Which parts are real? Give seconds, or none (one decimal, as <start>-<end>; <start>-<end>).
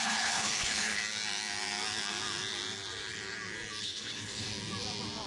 1.0-3.8; 4.5-5.3